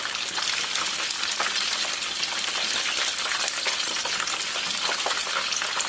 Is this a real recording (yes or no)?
yes